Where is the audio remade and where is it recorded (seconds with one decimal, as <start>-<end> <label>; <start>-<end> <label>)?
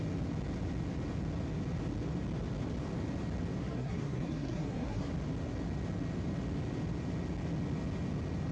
0.0-3.6 recorded; 3.6-5.1 remade; 5.1-8.5 recorded